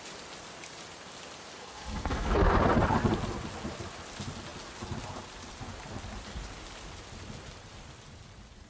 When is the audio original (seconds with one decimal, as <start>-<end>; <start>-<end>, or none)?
0.0-1.6; 2.5-8.7